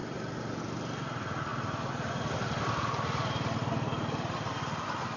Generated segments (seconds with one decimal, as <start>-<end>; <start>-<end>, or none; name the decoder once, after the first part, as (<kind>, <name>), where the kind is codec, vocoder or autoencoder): none